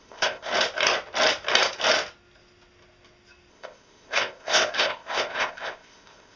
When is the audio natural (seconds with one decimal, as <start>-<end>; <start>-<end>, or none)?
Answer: 0.5-3.5